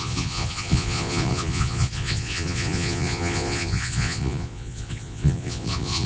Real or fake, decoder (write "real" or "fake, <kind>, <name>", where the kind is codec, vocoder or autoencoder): fake, vocoder, Vocos